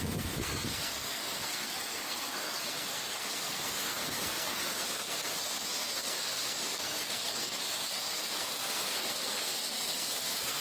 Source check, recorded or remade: remade